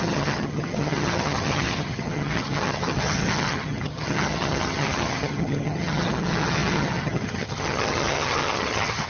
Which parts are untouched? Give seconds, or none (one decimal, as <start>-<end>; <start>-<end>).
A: none